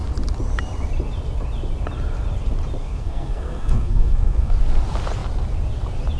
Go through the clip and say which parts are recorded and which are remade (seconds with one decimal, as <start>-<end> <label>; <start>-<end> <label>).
0.0-2.8 recorded; 2.8-4.5 remade; 4.5-6.2 recorded